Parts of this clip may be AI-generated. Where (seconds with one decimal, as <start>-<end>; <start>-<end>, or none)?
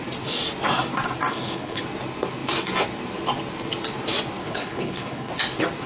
1.3-1.8; 4.4-5.3